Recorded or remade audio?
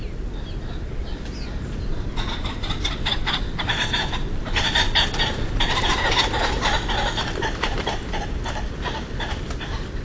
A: recorded